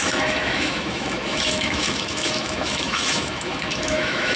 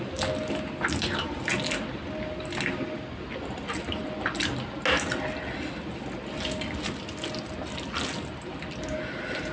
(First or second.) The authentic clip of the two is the second